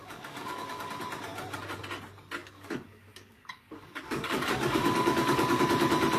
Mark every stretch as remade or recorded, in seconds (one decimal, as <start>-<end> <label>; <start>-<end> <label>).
0.0-0.9 remade; 0.9-2.4 recorded; 2.4-5.6 remade; 5.6-6.2 recorded